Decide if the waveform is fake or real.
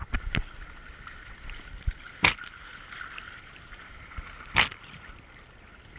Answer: real